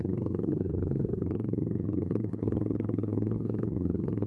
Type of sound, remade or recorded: remade